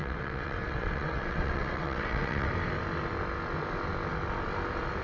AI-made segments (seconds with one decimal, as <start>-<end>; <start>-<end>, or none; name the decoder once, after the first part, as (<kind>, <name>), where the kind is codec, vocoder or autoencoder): 0.0-2.5 (vocoder, WaveNeXt)

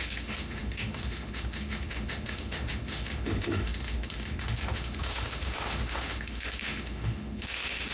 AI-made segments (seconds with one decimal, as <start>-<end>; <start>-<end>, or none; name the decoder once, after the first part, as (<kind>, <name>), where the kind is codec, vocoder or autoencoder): 0.0-7.9 (autoencoder, DAC-VAE)

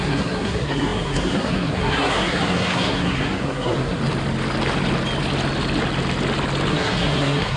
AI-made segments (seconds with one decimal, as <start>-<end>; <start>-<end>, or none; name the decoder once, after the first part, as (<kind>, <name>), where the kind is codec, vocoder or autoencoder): 0.0-4.0 (codec, SNAC); 6.7-7.6

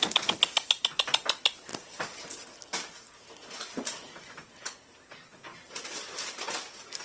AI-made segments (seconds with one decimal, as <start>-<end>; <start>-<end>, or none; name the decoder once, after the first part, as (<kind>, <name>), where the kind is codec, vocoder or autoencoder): 1.7-2.2 (vocoder, BigVGAN v2); 2.7-4.3; 5.5-6.4

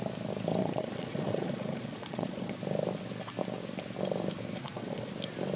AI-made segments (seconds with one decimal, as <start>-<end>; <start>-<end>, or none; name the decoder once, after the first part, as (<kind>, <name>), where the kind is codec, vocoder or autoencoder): 0.6-2.5 (vocoder, Vocos); 4.6-5.1